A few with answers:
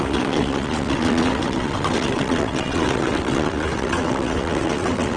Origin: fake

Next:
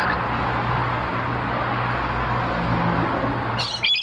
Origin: real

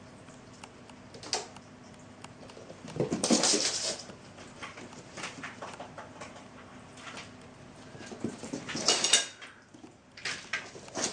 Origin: real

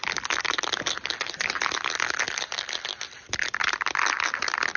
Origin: real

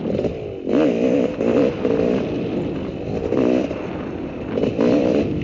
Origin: real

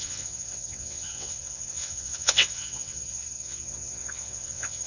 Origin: fake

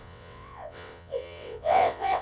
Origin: fake